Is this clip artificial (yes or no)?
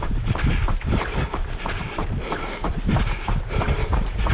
yes